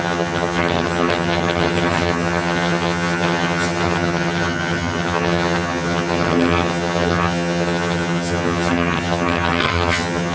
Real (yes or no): no